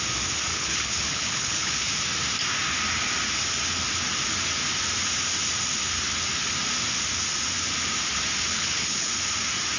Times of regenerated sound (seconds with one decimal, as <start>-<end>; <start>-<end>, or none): 0.5-1.9; 8.5-9.1